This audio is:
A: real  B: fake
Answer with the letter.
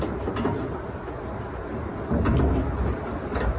A